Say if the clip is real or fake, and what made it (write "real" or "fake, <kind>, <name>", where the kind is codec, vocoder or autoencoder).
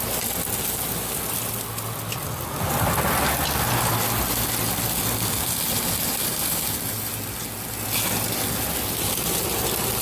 real